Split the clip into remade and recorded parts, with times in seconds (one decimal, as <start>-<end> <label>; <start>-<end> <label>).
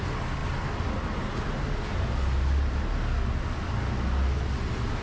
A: 0.0-5.0 recorded